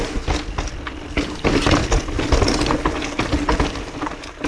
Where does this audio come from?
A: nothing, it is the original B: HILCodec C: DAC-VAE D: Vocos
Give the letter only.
A